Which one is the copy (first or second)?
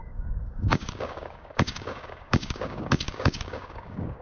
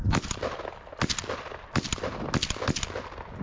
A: first